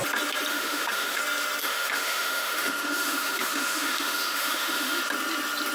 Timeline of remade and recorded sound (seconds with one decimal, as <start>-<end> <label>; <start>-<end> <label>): 0.0-0.5 recorded; 0.5-1.2 remade; 1.2-1.6 recorded; 1.6-5.0 remade; 5.0-5.7 recorded